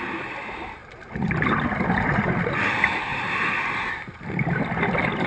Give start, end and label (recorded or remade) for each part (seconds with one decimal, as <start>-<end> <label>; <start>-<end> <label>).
0.0-0.8 recorded; 0.8-2.7 remade; 2.7-5.3 recorded